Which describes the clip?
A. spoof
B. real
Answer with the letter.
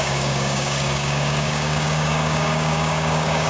A